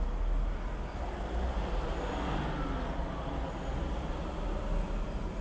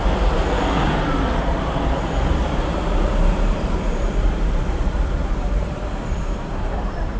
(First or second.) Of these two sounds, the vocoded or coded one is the second